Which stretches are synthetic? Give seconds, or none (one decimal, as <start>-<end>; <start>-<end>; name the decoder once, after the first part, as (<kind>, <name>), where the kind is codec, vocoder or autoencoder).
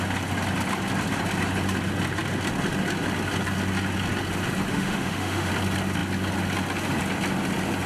4.7-5.5 (autoencoder, DAC-VAE)